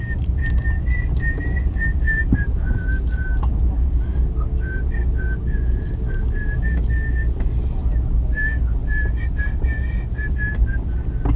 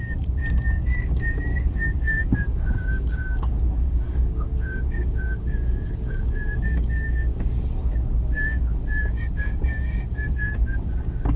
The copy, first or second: second